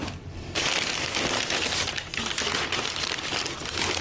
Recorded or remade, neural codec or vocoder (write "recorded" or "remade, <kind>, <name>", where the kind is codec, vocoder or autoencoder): recorded